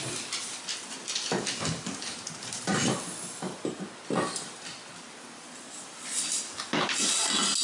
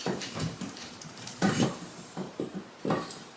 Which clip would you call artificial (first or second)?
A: second